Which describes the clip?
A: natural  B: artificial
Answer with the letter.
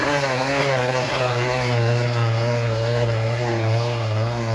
B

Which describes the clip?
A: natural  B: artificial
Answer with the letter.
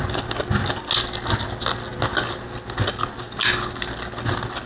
A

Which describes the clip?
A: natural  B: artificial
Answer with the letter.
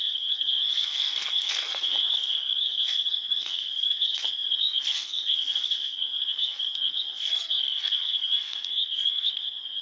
B